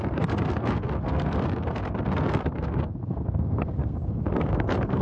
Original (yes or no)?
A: no